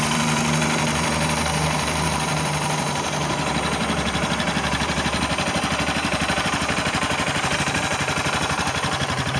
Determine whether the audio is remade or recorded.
remade